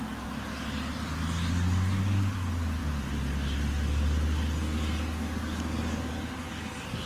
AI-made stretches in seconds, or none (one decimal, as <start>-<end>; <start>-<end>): none